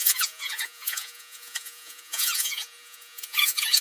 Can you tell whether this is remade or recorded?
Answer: remade